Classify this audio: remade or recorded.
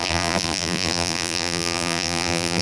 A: remade